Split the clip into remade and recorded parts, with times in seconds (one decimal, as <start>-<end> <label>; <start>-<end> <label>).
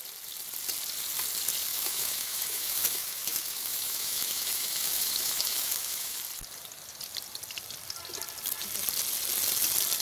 0.0-1.7 recorded; 1.7-6.2 remade; 6.2-10.0 recorded